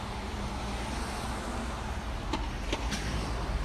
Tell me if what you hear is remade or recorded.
recorded